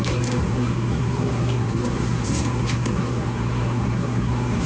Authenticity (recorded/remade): remade